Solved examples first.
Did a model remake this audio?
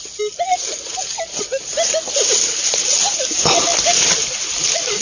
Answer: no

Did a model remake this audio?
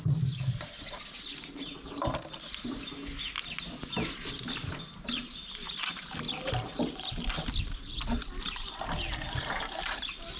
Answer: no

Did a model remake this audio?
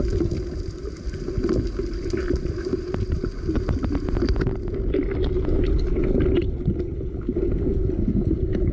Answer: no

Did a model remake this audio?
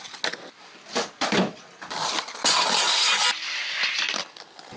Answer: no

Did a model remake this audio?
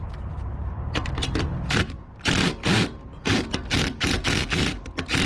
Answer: no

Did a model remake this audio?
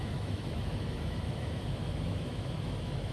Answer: yes